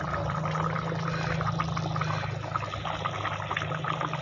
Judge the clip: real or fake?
real